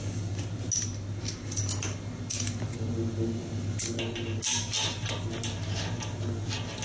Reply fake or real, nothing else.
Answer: real